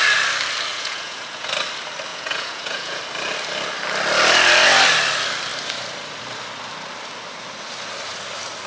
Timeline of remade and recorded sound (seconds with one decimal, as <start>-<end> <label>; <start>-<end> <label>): 0.0-0.7 recorded; 0.7-1.5 remade; 1.5-2.1 recorded; 2.1-3.0 remade; 3.0-8.7 recorded